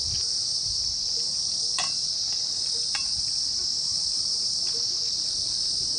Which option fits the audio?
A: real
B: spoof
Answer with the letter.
A